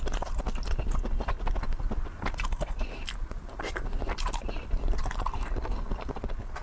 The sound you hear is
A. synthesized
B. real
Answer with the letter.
B